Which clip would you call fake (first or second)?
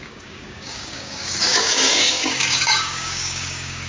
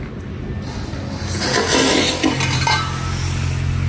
first